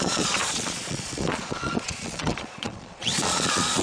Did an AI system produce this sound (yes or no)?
yes